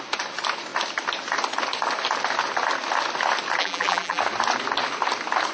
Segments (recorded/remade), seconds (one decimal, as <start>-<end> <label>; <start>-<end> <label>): 0.0-3.6 recorded; 3.6-4.2 remade; 4.2-5.5 recorded